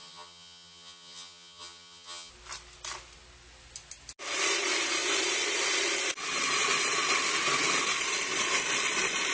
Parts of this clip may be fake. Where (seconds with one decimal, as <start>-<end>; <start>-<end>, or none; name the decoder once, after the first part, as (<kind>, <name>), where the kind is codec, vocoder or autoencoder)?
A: 0.0-2.3 (vocoder, HiFi-GAN)